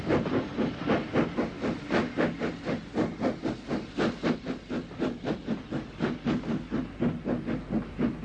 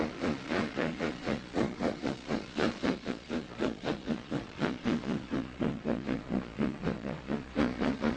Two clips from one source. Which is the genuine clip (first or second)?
first